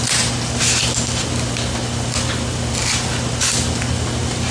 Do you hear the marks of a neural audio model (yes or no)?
no